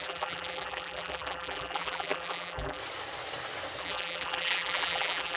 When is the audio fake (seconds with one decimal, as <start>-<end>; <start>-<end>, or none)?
0.0-2.8; 3.8-5.4